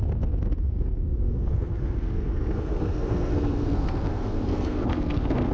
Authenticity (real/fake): fake